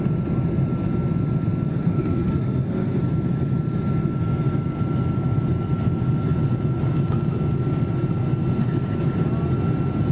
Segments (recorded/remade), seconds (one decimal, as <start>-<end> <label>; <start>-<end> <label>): 0.0-1.7 recorded; 1.7-3.0 remade; 3.0-10.1 recorded